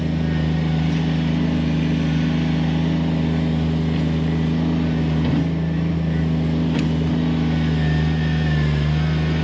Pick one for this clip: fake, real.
real